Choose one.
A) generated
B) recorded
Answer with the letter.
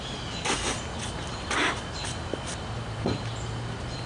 B